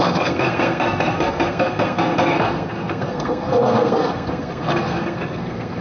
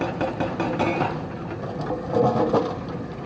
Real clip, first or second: second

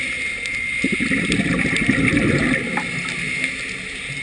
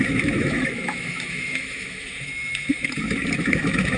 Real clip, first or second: first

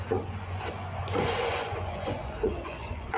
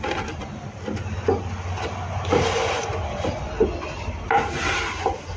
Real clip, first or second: second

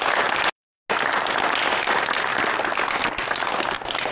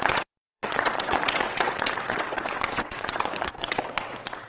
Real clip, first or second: first